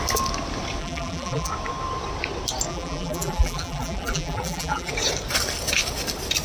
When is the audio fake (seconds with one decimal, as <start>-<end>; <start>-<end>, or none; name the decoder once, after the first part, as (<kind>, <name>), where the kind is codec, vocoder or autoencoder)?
0.8-1.5 (vocoder, BigVGAN v2); 2.7-4.9